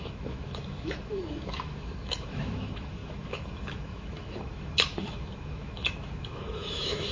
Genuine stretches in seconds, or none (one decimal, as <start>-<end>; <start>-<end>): none